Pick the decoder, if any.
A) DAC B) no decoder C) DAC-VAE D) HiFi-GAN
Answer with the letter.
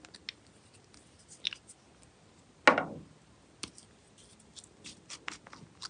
B